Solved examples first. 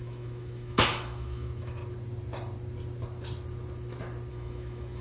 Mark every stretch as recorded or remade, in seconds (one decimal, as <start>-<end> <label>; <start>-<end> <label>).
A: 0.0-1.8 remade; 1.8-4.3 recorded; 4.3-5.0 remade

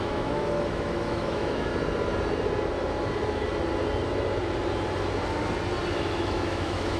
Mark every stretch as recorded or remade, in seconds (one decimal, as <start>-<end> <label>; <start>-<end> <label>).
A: 0.0-1.7 remade; 1.7-5.9 recorded; 5.9-7.0 remade

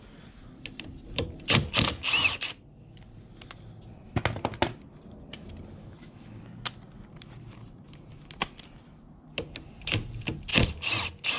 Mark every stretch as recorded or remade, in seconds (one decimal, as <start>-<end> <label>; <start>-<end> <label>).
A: 0.0-5.8 recorded; 5.8-6.4 remade; 6.4-11.4 recorded